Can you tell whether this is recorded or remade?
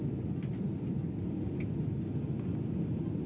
recorded